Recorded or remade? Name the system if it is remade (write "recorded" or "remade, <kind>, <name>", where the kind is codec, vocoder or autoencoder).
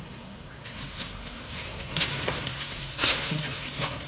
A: remade, codec, SNAC